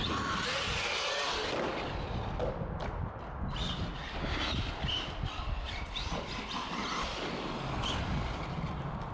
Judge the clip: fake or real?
real